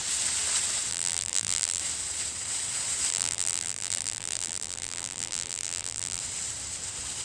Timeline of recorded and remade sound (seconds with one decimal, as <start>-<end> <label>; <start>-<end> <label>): 0.0-0.9 recorded; 0.9-1.8 remade; 1.8-3.1 recorded; 3.1-6.2 remade; 6.2-7.2 recorded